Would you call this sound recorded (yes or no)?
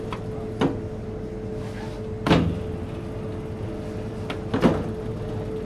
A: yes